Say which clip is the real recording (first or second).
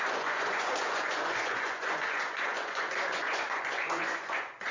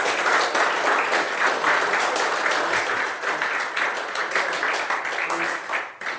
second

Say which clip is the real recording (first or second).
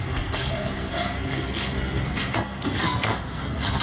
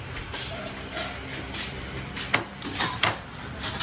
second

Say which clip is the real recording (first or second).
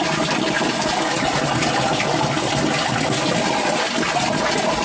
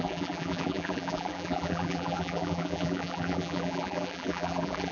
first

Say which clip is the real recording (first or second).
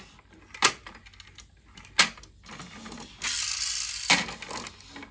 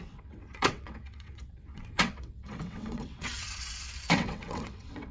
first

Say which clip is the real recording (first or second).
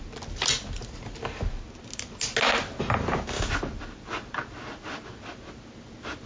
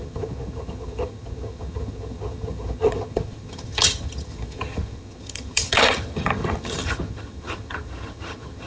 first